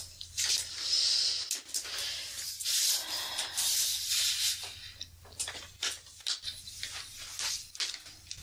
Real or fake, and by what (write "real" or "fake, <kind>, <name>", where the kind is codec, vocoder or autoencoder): real